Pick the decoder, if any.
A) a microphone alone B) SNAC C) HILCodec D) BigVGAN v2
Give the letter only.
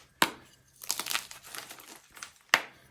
A